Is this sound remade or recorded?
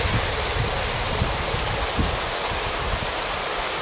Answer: recorded